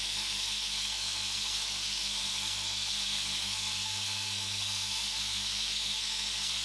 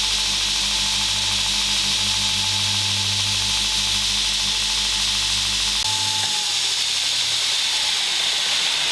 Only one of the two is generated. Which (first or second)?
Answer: first